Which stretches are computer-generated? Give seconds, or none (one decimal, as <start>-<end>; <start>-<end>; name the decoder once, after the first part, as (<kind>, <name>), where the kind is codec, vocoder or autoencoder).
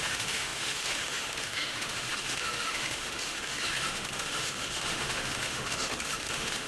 0.0-6.7 (autoencoder, DAC-VAE)